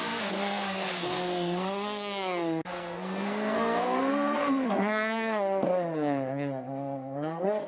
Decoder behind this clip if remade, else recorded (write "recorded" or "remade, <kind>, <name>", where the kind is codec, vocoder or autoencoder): remade, codec, SNAC